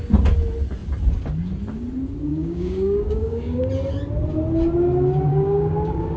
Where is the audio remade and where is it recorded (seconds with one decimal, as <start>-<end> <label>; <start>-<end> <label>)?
0.0-2.3 recorded; 2.3-3.6 remade; 3.6-5.3 recorded; 5.3-6.2 remade